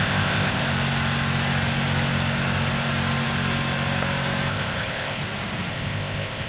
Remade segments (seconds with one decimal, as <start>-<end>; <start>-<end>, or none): 0.0-0.6; 4.5-5.2; 5.7-6.5